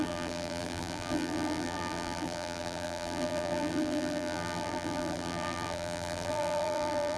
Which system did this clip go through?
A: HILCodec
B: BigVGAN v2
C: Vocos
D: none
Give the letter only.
B